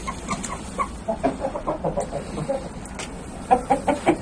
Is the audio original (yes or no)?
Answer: yes